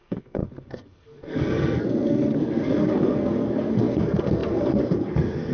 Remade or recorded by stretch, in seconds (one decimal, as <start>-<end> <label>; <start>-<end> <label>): 0.0-5.5 remade